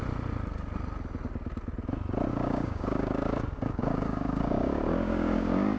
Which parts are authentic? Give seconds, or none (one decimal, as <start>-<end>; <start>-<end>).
0.0-2.3